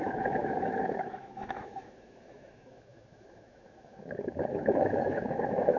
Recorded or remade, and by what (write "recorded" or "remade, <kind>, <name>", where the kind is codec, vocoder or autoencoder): remade, autoencoder, DAC-VAE